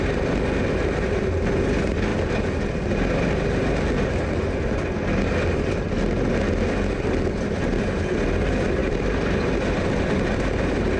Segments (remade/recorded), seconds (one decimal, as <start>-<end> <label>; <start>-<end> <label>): 0.0-8.8 recorded; 8.8-9.4 remade; 9.4-11.0 recorded